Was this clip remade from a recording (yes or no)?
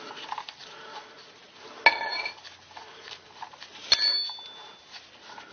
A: no